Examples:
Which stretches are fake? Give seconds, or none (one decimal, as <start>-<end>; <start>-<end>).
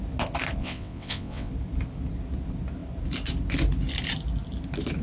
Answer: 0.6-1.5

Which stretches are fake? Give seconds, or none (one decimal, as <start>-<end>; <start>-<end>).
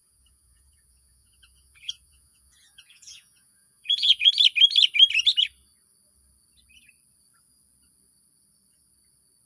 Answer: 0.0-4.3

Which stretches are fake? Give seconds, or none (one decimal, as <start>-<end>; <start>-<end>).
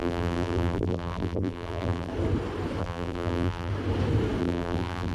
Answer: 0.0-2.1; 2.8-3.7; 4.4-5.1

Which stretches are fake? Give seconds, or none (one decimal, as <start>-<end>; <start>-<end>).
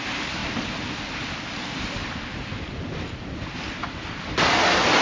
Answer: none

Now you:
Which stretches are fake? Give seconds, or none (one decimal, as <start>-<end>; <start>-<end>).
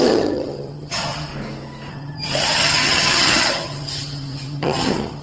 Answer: 0.0-1.3; 1.9-5.2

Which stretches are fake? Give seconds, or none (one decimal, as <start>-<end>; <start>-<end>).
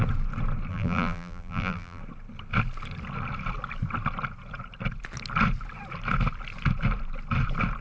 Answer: 0.7-2.0